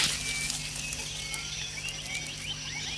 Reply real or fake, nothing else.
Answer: real